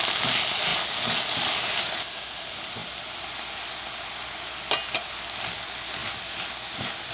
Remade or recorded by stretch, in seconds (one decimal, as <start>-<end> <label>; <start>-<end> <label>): 0.0-7.1 recorded